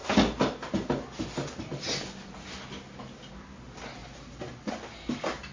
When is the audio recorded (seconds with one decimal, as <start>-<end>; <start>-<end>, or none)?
0.0-5.5